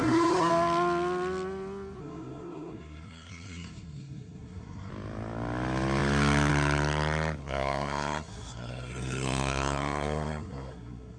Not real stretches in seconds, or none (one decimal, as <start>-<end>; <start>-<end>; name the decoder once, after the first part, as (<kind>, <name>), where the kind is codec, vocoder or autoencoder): 0.0-0.5 (codec, SNAC); 2.0-4.9; 7.4-11.2